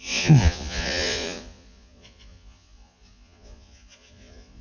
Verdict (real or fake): fake